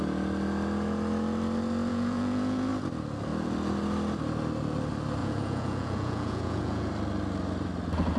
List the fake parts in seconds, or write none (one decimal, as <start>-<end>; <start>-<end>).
1.9-2.7; 5.2-6.9

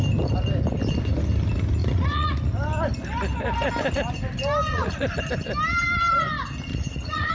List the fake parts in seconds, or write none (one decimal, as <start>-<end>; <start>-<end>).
1.8-2.5; 4.7-5.2; 6.7-7.3

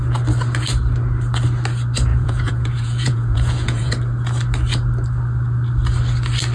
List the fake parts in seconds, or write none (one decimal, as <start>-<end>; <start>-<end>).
2.1-3.9

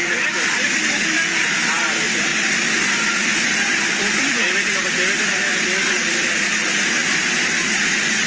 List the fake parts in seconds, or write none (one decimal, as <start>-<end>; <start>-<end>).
none

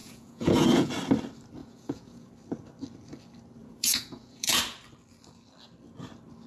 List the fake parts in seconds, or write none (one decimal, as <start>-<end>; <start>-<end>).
0.0-0.9; 1.6-2.3; 3.6-4.6

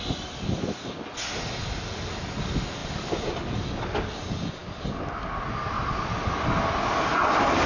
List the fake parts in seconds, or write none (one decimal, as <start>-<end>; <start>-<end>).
none